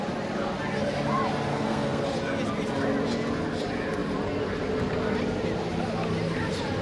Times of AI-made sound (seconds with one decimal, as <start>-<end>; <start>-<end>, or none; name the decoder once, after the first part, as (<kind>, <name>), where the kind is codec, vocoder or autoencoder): 1.5-2.0 (codec, SNAC)

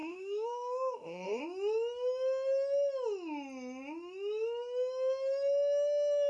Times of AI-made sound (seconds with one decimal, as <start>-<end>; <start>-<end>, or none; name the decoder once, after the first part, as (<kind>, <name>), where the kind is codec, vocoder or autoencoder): 0.0-1.4 (autoencoder, DAC-VAE)

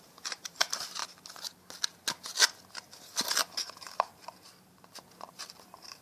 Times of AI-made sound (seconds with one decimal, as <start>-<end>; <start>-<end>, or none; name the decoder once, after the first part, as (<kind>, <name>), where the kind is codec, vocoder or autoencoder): 0.0-1.0 (vocoder, BigVGAN v2); 3.3-4.1; 5.3-6.0

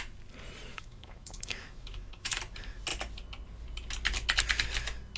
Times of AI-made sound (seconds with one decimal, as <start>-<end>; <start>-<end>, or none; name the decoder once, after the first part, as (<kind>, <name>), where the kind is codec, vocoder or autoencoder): 0.7-2.4 (autoencoder, DAC-VAE)

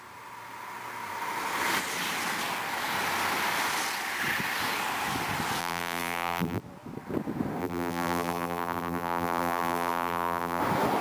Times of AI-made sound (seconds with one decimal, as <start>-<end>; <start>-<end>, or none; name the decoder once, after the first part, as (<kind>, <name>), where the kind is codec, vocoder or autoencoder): 5.6-6.6 (vocoder, BigVGAN v2); 7.6-10.6

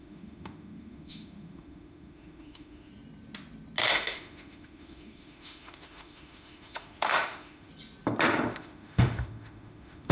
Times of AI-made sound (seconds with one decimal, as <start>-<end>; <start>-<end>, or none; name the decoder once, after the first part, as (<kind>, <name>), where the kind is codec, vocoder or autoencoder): 0.0-2.9 (autoencoder, DAC-VAE); 3.9-7.7; 8.3-10.1

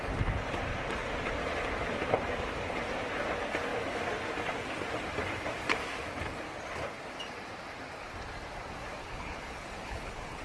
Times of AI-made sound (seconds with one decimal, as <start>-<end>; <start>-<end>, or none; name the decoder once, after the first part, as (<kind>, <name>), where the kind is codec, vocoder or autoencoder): 9.0-10.4 (codec, HILCodec)

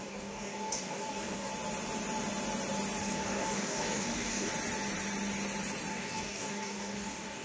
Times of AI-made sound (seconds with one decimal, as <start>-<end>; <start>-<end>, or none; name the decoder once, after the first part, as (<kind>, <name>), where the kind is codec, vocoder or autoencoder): 0.0-1.5 (codec, DAC); 3.0-4.5; 5.9-7.4